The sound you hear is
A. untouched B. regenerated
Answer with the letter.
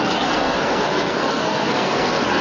B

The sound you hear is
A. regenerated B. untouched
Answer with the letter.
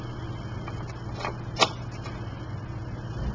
B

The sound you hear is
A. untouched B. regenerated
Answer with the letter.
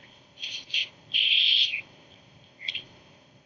B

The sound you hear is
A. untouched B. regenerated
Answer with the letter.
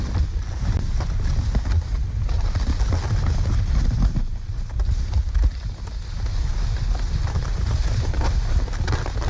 A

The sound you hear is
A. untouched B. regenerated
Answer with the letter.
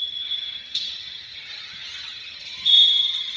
B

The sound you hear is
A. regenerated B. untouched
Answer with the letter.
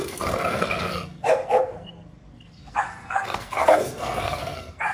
A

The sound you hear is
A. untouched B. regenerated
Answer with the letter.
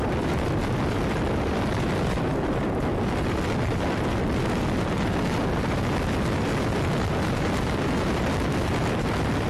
B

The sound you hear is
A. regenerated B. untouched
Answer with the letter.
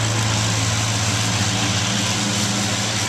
B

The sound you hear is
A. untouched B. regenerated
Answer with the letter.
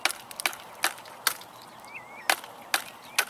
A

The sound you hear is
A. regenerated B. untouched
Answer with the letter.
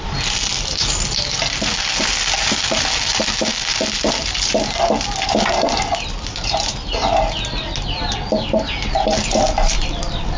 B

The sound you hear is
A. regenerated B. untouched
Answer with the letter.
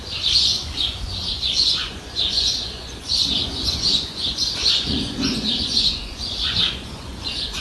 A